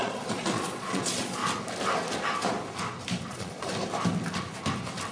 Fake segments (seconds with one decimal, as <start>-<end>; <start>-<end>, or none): 0.0-1.4; 3.3-3.7